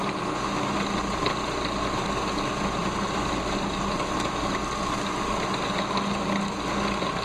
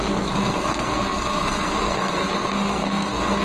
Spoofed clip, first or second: second